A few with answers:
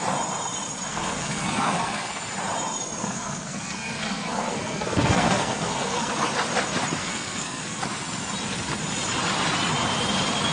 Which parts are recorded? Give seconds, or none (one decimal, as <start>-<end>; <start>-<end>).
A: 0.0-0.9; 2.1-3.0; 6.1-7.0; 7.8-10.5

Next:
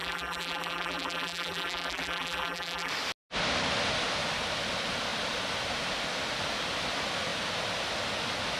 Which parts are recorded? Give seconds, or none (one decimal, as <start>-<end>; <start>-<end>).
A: 2.9-8.6

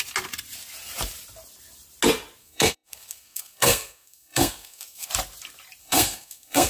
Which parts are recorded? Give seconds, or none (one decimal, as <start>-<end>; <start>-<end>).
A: 0.0-2.4; 5.1-5.8